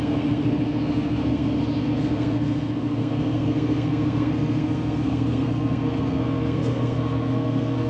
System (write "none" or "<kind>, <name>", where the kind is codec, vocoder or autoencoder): codec, SNAC